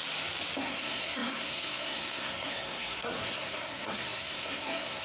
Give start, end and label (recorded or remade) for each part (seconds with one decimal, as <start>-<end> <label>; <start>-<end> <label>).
0.0-0.6 recorded; 0.6-5.0 remade